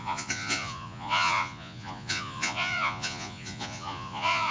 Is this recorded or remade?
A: remade